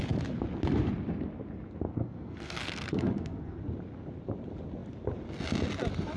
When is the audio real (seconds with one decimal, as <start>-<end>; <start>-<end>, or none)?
0.0-1.9; 3.6-6.2